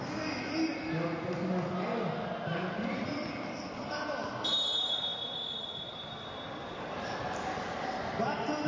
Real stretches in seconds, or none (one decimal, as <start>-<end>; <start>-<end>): 0.0-8.7